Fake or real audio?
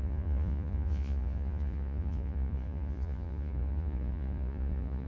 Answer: fake